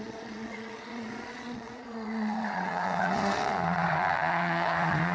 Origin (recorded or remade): remade